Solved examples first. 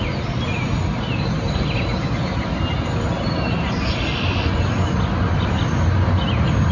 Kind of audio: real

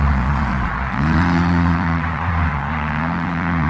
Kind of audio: fake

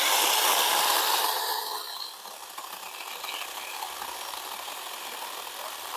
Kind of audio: real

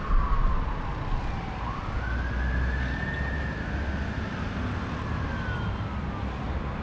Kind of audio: real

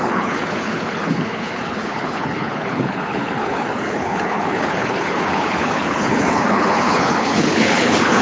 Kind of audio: fake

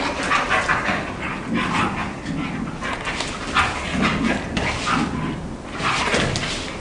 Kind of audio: real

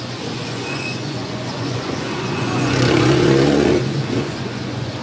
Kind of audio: fake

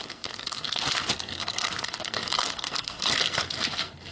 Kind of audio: fake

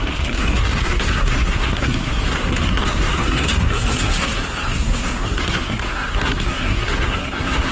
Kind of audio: fake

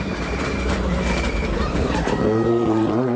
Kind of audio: fake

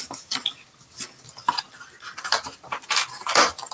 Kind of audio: real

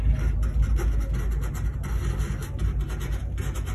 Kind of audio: real